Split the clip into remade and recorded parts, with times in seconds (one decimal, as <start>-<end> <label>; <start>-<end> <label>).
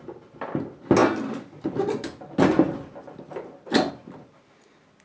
0.0-5.0 recorded